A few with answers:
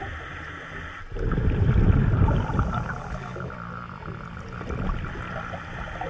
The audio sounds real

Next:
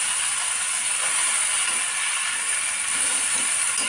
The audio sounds real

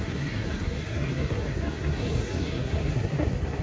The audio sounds fake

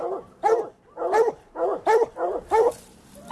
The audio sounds real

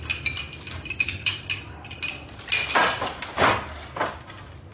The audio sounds real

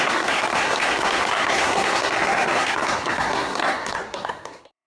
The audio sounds fake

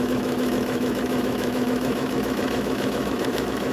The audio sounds fake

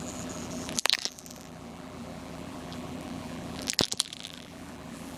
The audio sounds fake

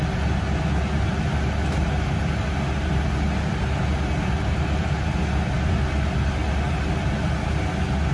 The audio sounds real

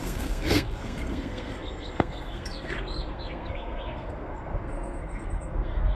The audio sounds fake